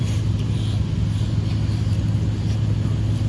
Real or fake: real